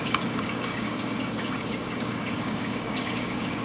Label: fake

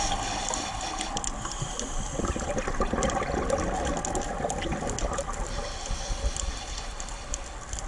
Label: real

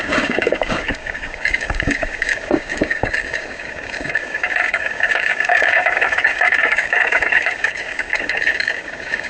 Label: fake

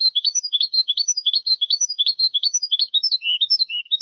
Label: fake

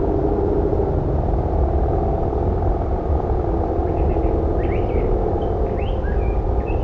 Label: real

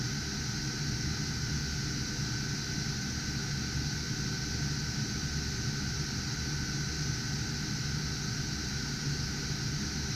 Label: real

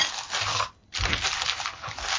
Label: real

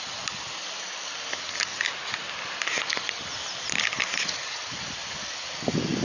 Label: real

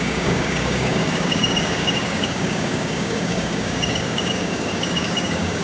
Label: fake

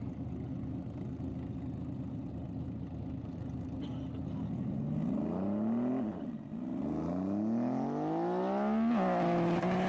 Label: real